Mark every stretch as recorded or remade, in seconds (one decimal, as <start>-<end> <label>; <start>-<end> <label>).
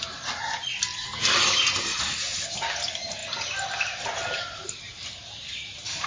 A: 0.0-6.1 recorded